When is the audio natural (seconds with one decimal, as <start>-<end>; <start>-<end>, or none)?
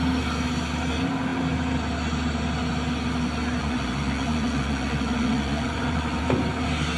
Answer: 0.0-3.6; 6.2-7.0